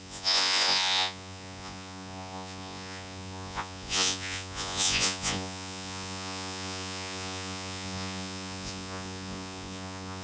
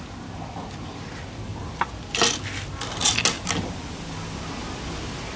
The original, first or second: second